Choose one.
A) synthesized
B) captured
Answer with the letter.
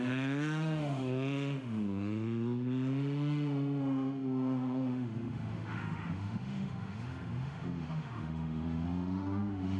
A